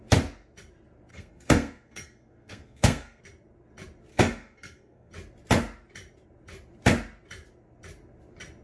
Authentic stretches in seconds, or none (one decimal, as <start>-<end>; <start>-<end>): 0.0-1.1; 3.2-4.1; 5.1-8.6